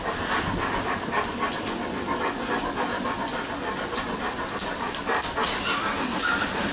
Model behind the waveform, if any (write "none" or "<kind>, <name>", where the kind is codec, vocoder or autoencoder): none